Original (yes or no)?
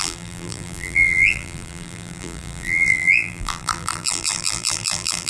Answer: no